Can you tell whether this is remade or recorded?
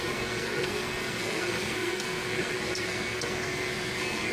remade